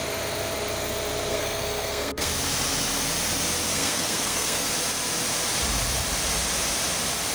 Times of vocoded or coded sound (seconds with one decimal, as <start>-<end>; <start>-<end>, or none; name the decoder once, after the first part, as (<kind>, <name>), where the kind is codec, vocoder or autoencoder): 1.3-2.3 (codec, SNAC); 3.7-4.7